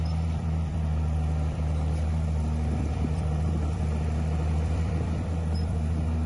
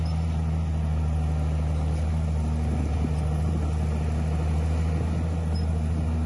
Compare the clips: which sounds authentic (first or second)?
second